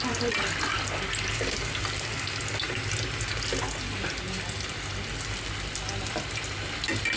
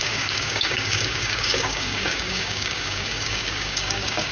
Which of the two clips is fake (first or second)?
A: second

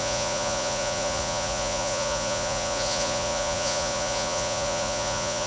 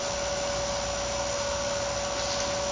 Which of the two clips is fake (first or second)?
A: first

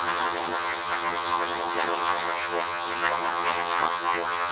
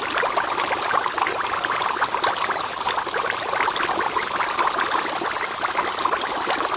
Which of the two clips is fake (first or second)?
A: first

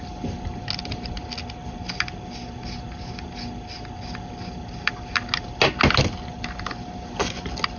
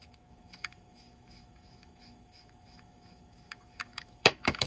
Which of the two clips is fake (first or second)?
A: second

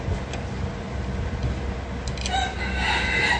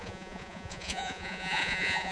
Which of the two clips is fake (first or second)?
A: second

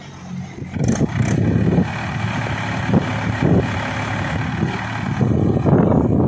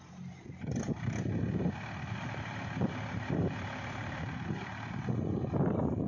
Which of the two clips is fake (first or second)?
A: second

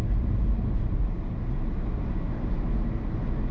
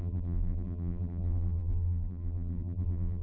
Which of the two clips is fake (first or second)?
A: second